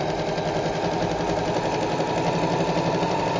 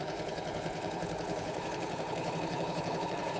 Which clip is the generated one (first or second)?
second